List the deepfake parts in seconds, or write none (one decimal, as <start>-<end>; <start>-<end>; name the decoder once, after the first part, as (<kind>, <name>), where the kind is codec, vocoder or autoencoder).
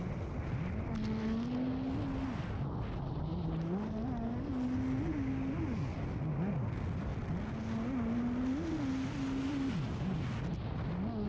none